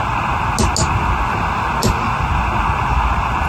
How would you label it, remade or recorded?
recorded